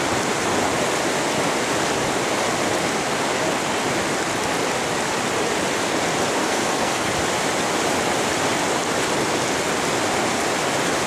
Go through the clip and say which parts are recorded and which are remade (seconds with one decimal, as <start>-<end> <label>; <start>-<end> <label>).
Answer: 0.0-6.4 recorded; 6.4-7.1 remade; 7.1-11.1 recorded